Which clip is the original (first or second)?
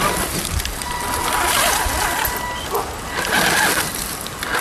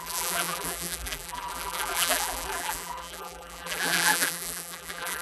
first